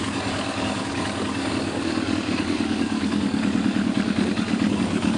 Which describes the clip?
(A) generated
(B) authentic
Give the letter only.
A